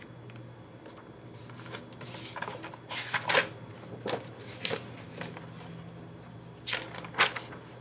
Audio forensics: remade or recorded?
recorded